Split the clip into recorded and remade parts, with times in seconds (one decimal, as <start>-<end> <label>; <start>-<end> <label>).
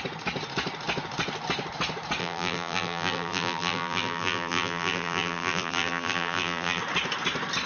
0.0-2.2 recorded; 2.2-6.8 remade; 6.8-7.7 recorded